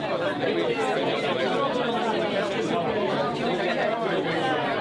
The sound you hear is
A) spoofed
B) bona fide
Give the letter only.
B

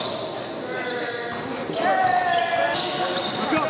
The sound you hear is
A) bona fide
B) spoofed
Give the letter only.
A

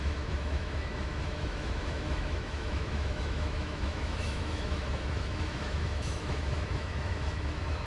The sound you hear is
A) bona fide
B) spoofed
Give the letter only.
B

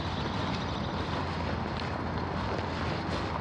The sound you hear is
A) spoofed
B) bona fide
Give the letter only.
B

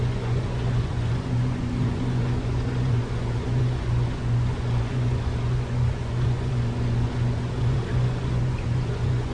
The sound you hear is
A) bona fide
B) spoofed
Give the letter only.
B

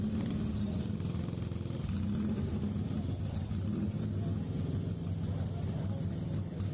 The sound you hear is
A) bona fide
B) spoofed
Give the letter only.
A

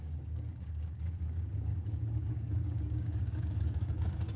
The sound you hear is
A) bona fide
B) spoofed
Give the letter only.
B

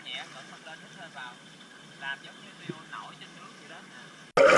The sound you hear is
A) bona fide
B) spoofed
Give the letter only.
A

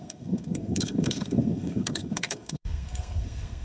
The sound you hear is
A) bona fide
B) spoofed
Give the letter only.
B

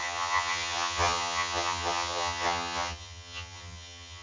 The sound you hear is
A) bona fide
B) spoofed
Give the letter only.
B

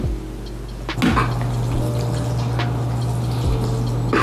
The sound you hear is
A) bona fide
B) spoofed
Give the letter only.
A